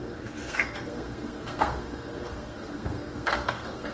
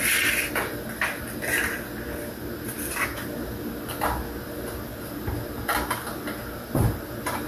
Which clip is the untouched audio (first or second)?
second